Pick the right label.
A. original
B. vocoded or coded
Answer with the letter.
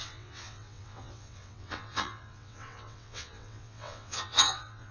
B